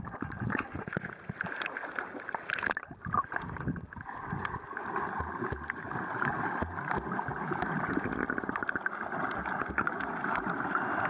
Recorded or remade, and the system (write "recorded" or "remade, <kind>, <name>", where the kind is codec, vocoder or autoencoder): recorded